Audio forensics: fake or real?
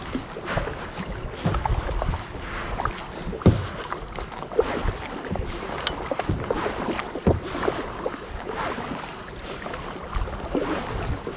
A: real